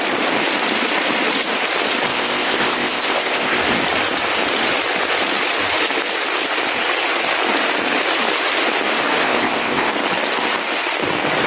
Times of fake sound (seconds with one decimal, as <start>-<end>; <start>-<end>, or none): 2.1-3.6; 9.2-9.9